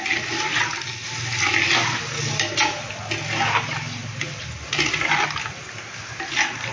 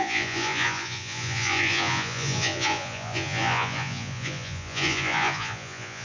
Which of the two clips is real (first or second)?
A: first